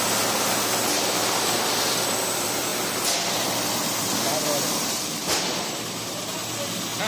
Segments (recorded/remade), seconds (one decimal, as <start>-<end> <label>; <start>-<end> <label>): 0.0-7.1 remade

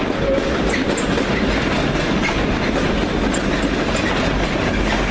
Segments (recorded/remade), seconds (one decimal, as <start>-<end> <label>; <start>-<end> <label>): 0.0-1.3 remade; 1.3-5.1 recorded

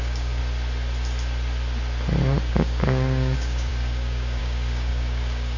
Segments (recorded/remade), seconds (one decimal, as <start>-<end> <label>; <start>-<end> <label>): 0.0-0.4 remade; 0.4-2.5 recorded; 2.5-5.6 remade

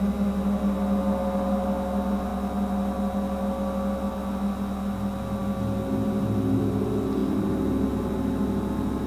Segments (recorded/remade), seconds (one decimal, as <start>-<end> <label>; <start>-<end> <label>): 0.0-9.1 recorded

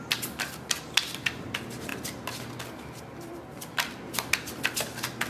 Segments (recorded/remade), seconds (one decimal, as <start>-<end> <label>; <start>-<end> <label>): 0.0-5.3 recorded

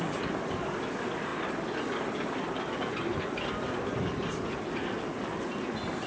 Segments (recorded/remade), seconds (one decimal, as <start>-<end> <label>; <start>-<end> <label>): 0.0-6.1 recorded

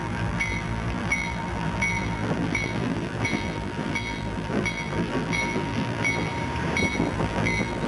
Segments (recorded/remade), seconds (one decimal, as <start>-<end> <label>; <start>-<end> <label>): 0.0-6.3 remade; 6.3-6.9 recorded; 6.9-7.9 remade